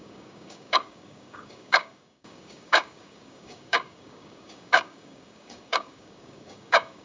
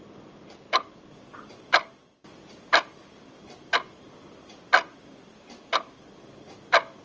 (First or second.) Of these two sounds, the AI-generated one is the first